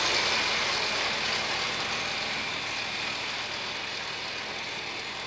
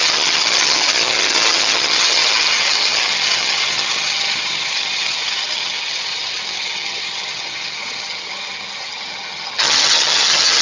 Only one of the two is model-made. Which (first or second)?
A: second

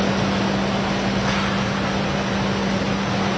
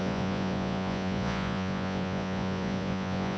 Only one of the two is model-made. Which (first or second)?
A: second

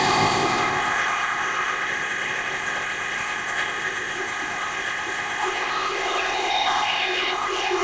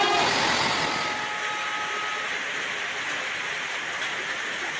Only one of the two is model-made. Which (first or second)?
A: first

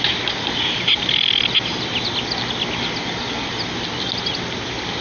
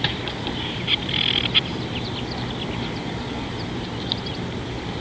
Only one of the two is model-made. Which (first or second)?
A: second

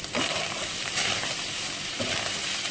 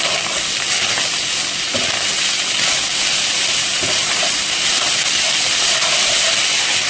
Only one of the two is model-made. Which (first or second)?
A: first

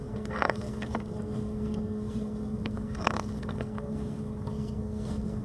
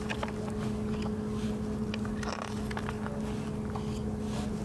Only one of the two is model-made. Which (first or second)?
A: first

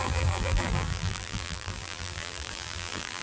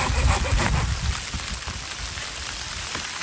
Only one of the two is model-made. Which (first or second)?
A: first